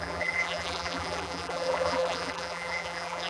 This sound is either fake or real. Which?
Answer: fake